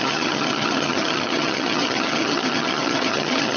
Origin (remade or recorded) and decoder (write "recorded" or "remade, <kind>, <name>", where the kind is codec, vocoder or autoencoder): remade, vocoder, HiFi-GAN